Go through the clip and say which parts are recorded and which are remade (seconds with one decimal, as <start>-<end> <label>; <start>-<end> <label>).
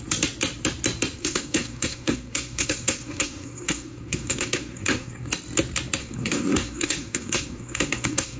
0.0-1.2 recorded; 1.2-5.3 remade; 5.3-6.0 recorded; 6.0-8.4 remade